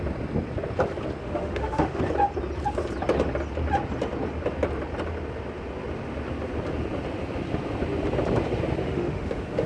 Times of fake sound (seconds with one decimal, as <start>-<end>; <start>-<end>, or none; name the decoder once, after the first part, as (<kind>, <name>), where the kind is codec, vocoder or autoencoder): 1.2-2.0 (autoencoder, DAC-VAE); 8.8-9.7